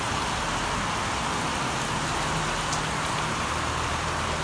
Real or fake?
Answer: real